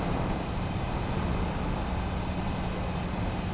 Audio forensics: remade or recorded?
recorded